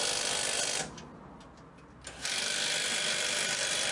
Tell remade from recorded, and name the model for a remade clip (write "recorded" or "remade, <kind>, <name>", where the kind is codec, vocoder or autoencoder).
recorded